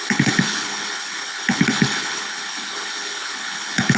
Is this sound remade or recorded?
remade